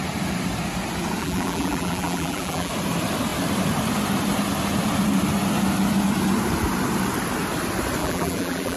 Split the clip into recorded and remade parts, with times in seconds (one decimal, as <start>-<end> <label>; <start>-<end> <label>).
0.0-1.2 recorded; 1.2-2.7 remade; 2.7-8.0 recorded; 8.0-8.8 remade